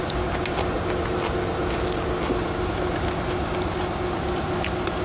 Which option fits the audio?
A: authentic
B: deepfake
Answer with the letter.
A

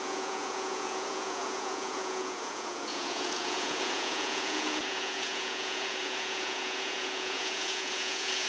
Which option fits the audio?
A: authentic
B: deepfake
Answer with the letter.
B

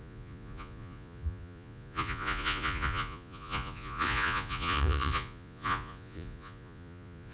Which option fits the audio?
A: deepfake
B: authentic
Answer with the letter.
A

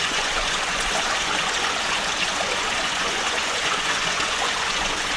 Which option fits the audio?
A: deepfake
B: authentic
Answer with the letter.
A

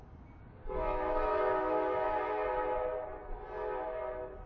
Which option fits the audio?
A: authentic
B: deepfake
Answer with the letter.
A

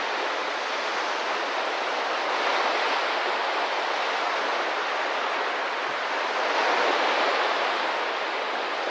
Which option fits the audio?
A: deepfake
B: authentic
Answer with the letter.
B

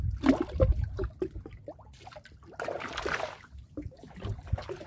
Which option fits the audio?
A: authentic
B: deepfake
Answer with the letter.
A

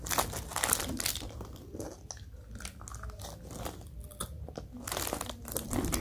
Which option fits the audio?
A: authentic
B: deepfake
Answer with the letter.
A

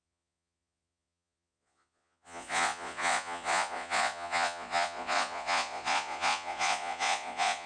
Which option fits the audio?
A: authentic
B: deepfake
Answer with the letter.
B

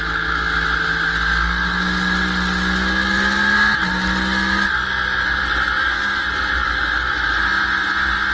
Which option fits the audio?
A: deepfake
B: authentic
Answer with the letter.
B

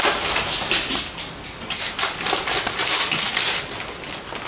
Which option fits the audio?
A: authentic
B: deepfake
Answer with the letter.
A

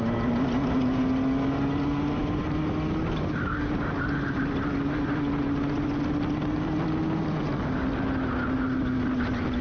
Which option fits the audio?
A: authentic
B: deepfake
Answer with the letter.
A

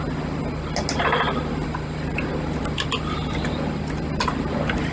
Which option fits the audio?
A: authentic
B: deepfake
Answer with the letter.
A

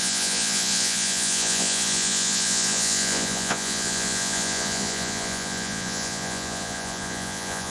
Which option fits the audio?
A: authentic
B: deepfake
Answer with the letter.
B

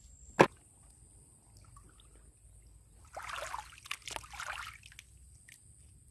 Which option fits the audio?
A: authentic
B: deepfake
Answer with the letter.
A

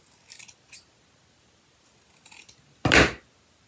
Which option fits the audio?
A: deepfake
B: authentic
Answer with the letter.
B